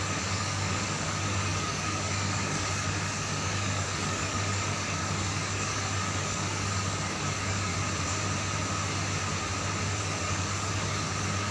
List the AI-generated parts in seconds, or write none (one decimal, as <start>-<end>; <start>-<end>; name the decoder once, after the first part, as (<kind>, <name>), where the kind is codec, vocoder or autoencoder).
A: 0.0-7.7 (codec, DAC); 10.0-11.5

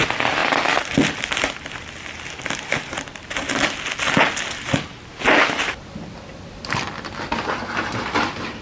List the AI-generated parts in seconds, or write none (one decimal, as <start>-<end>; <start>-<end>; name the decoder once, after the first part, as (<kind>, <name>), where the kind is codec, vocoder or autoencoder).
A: none